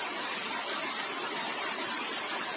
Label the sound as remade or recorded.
recorded